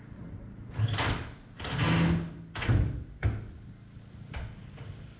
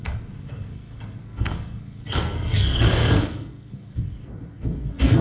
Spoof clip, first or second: second